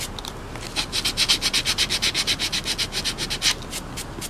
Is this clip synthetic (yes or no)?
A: no